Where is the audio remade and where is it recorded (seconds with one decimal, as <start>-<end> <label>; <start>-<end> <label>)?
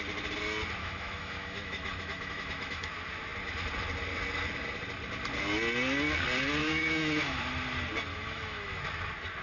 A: 0.0-0.8 recorded; 0.8-2.9 remade; 2.9-6.6 recorded; 6.6-7.4 remade; 7.4-8.1 recorded; 8.1-8.8 remade; 8.8-9.4 recorded